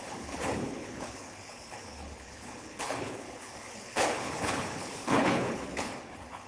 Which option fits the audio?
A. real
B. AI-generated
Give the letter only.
B